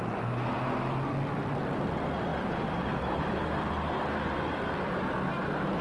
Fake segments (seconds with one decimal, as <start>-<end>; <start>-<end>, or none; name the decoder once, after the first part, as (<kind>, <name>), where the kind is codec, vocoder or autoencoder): 2.3-3.2 (vocoder, BigVGAN v2)